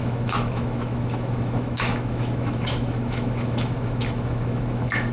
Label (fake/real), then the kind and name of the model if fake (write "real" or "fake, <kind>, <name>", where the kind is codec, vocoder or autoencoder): fake, autoencoder, DAC-VAE